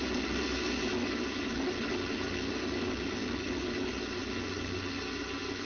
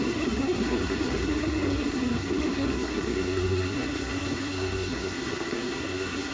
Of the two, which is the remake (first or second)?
second